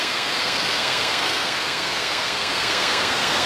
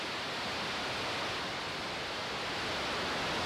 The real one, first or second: second